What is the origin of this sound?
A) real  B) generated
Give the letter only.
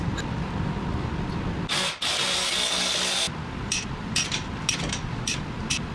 A